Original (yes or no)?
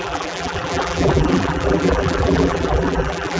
no